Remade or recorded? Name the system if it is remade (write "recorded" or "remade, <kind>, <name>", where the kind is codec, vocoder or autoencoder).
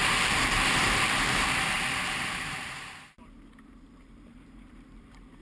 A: remade, vocoder, BigVGAN v2